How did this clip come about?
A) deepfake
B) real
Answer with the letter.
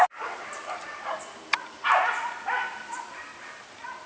B